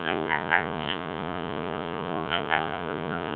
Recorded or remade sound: remade